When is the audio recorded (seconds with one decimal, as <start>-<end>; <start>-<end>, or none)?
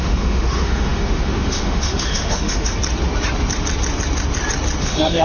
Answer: 2.8-4.8